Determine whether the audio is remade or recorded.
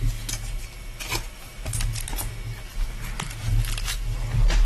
recorded